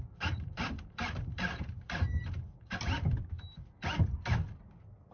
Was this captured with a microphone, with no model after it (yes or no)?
yes